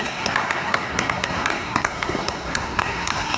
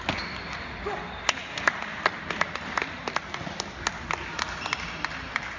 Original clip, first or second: second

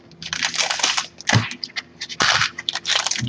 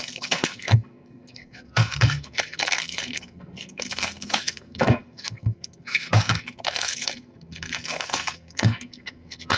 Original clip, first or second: first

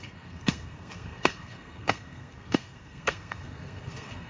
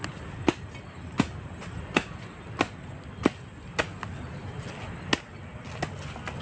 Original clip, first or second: second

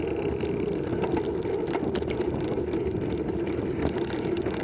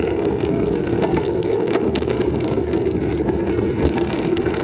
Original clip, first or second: first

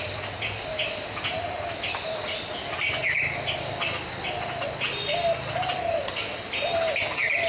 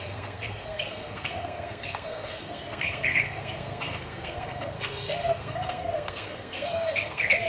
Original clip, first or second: first